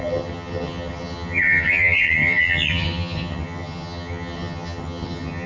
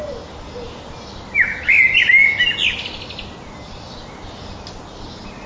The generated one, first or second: first